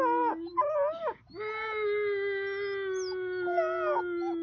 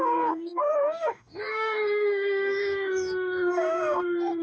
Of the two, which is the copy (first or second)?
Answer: second